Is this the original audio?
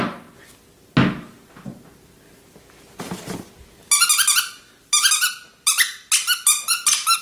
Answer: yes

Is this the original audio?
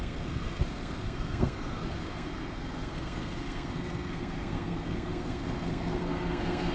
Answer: no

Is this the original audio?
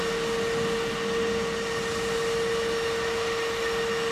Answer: yes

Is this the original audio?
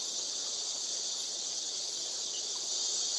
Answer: no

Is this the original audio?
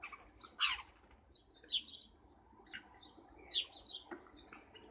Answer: yes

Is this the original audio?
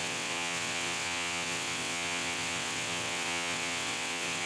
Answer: no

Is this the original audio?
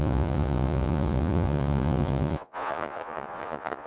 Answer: no